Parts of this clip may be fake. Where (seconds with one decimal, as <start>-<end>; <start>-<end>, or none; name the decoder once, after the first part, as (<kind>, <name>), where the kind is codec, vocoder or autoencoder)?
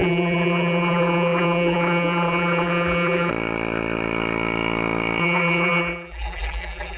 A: 0.0-3.3 (vocoder, BigVGAN v2); 5.2-7.0